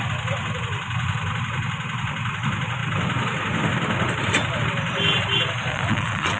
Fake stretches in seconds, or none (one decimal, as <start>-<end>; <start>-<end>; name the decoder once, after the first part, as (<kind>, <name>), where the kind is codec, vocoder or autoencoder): 5.7-6.4 (vocoder, WaveNeXt)